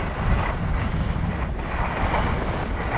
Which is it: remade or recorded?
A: recorded